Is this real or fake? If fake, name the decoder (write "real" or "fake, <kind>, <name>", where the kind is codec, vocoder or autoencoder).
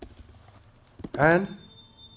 real